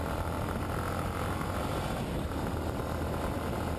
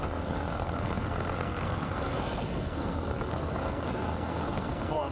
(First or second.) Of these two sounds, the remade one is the second